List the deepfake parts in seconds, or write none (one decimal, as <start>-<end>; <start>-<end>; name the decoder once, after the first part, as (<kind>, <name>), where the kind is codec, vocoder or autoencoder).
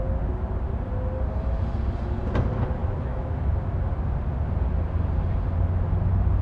2.8-3.5 (autoencoder, DAC-VAE)